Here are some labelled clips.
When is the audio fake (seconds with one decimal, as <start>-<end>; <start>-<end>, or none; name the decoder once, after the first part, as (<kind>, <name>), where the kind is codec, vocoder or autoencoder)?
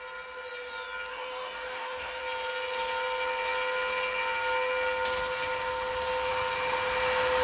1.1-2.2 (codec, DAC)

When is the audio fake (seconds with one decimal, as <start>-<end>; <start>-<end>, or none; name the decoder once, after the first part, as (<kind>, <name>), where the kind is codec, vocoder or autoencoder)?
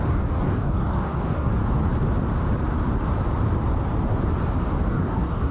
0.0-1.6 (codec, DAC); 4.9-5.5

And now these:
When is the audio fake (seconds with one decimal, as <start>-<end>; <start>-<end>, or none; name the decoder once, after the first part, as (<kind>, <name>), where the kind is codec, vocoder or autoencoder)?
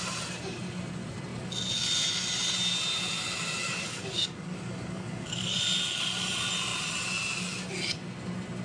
3.6-5.6 (codec, DAC)